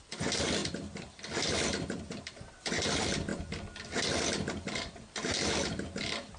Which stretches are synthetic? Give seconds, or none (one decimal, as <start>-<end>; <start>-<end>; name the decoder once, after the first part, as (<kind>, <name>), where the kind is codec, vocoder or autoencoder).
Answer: 0.6-2.2 (vocoder, BigVGAN v2)